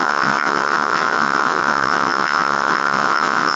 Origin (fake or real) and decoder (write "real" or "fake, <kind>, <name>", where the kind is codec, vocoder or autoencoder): fake, vocoder, WaveNeXt